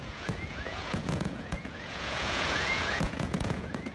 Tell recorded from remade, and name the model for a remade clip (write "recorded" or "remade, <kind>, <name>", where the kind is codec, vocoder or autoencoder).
remade, vocoder, Vocos